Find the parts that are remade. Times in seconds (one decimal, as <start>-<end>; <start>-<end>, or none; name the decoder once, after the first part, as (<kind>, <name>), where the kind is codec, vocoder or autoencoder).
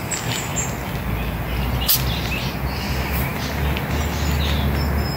none